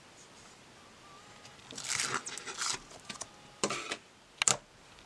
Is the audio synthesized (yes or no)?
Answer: no